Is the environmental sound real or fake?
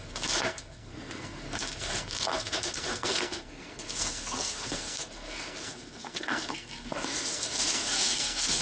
fake